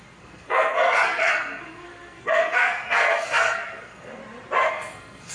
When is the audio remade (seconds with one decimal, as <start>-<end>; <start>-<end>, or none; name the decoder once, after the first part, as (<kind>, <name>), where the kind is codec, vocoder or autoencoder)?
0.0-4.2 (codec, SNAC); 4.7-5.3